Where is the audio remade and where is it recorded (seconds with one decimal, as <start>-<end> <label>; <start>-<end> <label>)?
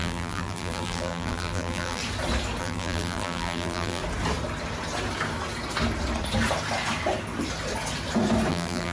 0.0-2.0 remade; 2.0-2.6 recorded; 2.6-4.0 remade; 4.0-8.5 recorded; 8.5-8.9 remade